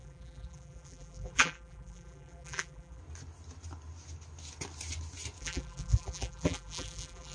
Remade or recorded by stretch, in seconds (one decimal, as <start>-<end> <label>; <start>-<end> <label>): 0.0-3.0 remade; 3.0-5.4 recorded; 5.4-7.3 remade